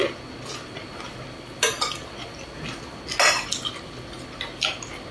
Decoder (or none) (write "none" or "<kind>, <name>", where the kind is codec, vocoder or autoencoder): none